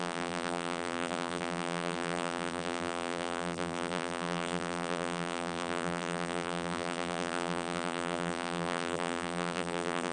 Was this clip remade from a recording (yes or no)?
yes